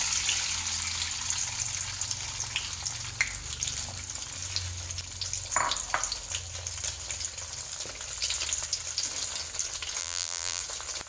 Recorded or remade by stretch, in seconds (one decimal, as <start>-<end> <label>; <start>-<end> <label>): 0.0-10.0 recorded; 10.0-10.6 remade; 10.6-11.1 recorded